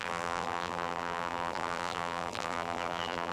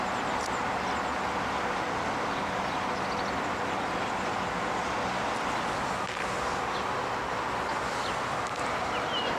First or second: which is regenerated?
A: first